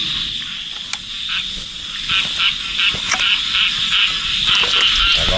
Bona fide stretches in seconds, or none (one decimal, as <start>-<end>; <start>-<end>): 0.0-5.4